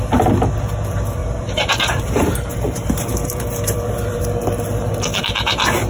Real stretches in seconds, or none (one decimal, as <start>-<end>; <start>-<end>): 0.0-1.2; 4.2-5.1